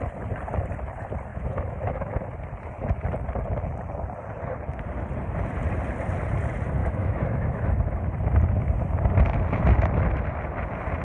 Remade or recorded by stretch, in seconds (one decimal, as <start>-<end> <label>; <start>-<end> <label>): 0.0-1.3 recorded; 1.3-2.2 remade; 2.2-6.8 recorded; 6.8-7.7 remade; 7.7-11.0 recorded